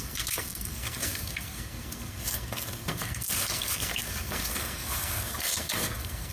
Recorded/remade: remade